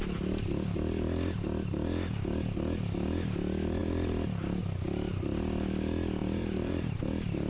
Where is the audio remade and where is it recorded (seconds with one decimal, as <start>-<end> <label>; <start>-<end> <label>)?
0.0-6.2 recorded; 6.2-7.0 remade; 7.0-7.5 recorded